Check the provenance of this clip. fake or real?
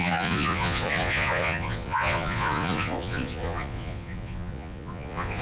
fake